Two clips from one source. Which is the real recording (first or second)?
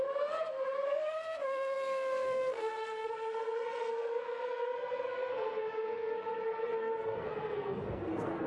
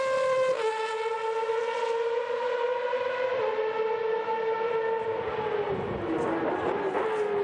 second